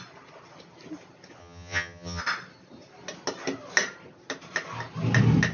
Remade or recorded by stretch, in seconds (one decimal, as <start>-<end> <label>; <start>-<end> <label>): 0.0-1.4 recorded; 1.4-2.2 remade; 2.2-5.5 recorded